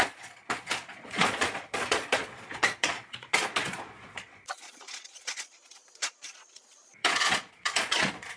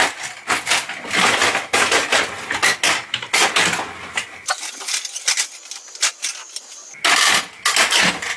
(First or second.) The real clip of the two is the second